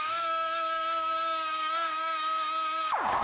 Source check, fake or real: fake